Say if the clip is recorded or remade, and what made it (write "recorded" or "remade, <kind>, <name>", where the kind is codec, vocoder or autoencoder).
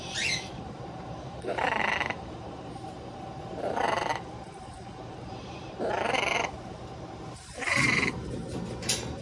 remade, vocoder, BigVGAN v2